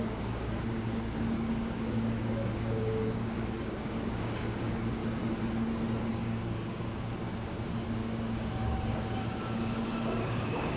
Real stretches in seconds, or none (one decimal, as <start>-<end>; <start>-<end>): 5.0-6.1